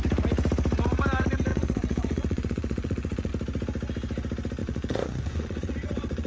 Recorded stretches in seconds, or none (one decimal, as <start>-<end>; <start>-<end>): 0.0-1.5; 3.3-4.6